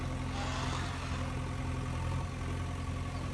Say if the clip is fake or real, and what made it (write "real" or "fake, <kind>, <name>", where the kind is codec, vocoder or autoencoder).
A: real